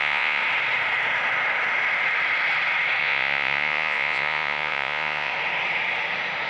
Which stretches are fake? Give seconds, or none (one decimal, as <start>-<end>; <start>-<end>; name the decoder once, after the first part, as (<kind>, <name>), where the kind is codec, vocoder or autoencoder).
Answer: 0.0-0.4 (vocoder, Vocos); 3.0-5.3